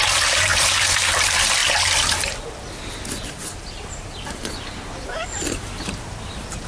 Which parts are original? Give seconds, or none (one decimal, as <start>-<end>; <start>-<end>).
1.6-5.0